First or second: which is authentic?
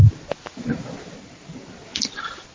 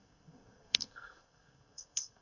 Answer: first